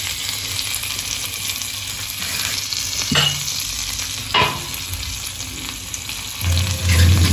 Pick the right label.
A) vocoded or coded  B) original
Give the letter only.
B